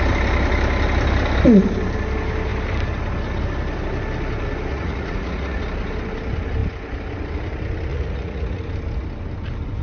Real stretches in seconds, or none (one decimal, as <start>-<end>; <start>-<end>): 0.0-4.7; 5.6-7.9; 8.6-9.8